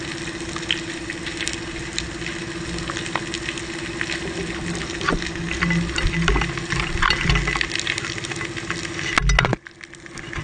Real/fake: real